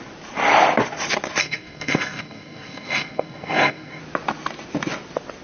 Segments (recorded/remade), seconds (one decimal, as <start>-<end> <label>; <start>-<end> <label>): 0.0-1.4 recorded; 1.4-4.0 remade; 4.0-5.4 recorded